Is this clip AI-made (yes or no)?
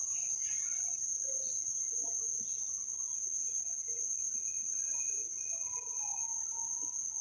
no